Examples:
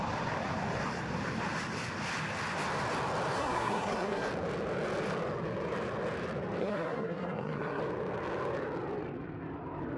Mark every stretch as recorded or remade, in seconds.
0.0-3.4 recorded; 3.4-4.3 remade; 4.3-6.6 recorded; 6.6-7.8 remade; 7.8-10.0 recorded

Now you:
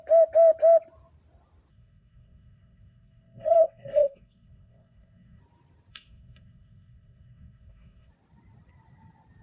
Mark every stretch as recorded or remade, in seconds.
0.0-1.7 recorded; 1.7-5.4 remade; 5.4-5.9 recorded; 5.9-8.1 remade; 8.1-9.4 recorded

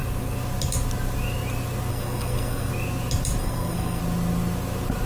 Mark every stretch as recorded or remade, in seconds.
0.0-1.9 recorded; 1.9-2.7 remade; 2.7-3.4 recorded; 3.4-4.0 remade; 4.0-5.1 recorded

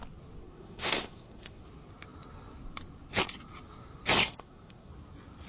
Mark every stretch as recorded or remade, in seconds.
0.0-0.4 recorded; 0.4-1.6 remade; 1.6-4.2 recorded; 4.2-4.9 remade; 4.9-5.5 recorded

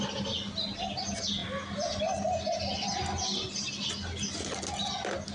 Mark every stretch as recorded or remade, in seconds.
0.0-5.3 recorded

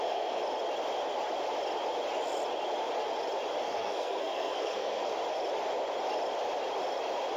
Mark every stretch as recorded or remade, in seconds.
0.0-0.4 remade; 0.4-3.6 recorded; 3.6-5.1 remade; 5.1-7.4 recorded